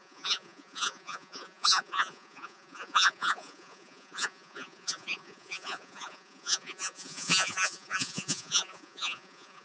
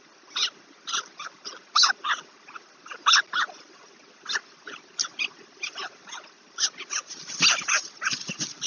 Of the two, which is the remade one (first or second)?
first